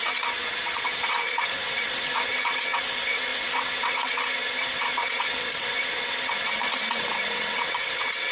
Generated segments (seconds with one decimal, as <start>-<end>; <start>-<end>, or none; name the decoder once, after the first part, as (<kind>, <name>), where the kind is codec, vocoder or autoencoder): 0.0-8.3 (vocoder, WaveNeXt)